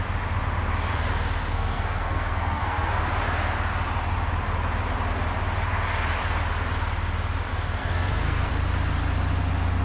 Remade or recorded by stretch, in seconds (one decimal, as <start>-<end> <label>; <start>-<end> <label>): 0.0-1.4 recorded; 1.4-3.0 remade; 3.0-7.5 recorded; 7.5-8.5 remade; 8.5-9.8 recorded